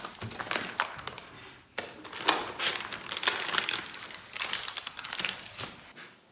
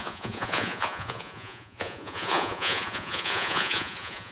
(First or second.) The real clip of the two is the first